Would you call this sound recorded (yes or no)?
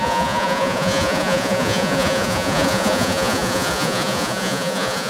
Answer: no